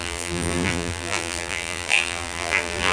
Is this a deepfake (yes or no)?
yes